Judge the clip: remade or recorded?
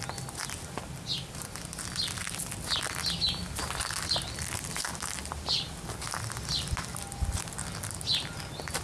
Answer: recorded